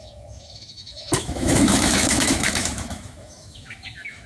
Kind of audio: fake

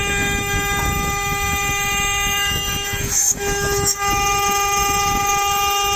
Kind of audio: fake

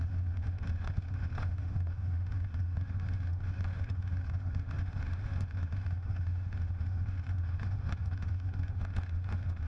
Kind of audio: fake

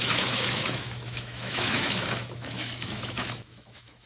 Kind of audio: fake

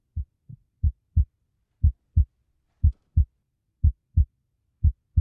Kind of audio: real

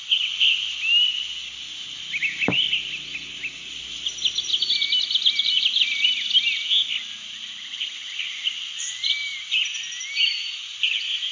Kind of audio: real